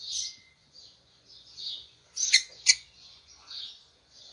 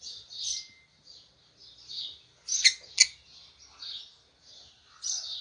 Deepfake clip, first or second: first